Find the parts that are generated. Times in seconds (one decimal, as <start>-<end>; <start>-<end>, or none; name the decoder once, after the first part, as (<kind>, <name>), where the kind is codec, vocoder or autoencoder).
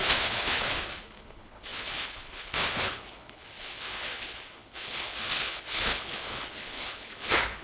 0.0-7.6 (codec, HILCodec)